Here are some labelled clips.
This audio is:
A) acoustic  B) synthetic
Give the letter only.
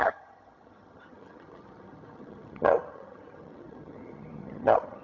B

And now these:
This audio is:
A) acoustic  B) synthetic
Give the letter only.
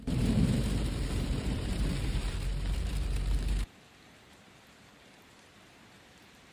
B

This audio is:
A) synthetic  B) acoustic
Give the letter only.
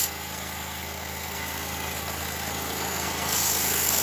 A